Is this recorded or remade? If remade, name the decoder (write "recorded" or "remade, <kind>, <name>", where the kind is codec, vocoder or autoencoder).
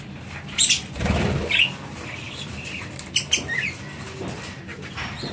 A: recorded